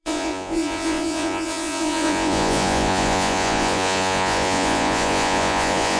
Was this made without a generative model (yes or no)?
no